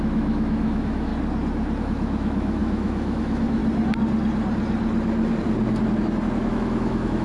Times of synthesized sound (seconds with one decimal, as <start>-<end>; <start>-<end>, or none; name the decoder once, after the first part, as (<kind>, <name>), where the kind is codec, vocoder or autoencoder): 0.0-1.1 (autoencoder, DAC-VAE); 1.8-3.6; 6.5-7.2